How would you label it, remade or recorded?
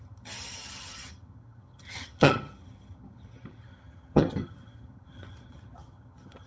remade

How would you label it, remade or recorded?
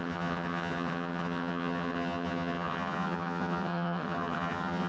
remade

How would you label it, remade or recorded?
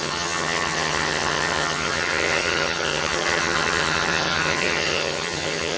remade